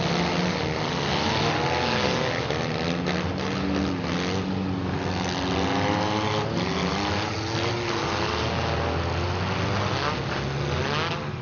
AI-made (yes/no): no